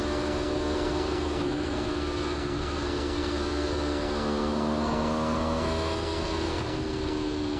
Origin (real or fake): fake